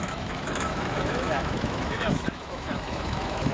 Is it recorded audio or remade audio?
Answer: remade